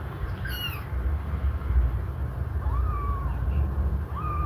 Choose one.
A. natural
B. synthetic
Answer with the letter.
A